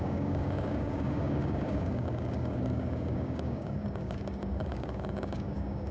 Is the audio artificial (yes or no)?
yes